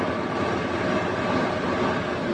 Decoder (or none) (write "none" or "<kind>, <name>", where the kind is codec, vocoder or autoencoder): none